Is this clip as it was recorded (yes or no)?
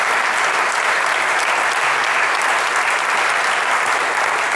yes